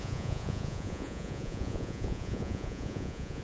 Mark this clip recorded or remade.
remade